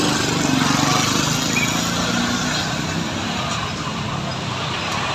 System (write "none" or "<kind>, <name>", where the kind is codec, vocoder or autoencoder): none